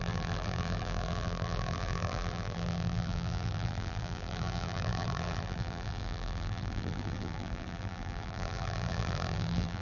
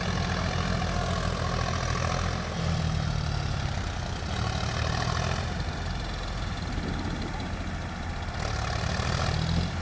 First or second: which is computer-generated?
first